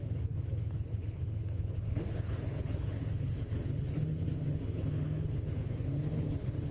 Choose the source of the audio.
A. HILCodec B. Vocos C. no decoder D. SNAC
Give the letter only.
A